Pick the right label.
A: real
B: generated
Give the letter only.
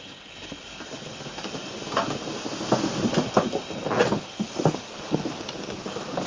A